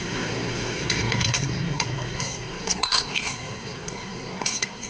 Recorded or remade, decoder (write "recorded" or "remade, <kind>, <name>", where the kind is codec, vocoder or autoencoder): remade, codec, SNAC